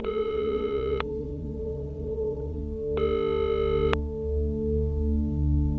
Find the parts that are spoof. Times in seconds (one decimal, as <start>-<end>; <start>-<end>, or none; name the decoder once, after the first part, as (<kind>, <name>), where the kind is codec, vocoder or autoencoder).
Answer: 0.0-2.6 (vocoder, WaveNeXt)